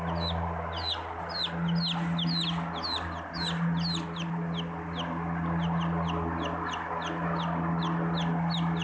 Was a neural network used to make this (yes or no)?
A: no